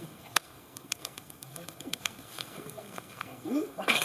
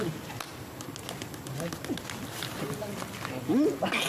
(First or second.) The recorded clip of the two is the second